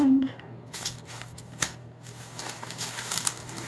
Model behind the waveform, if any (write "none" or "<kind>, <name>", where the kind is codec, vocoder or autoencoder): codec, DAC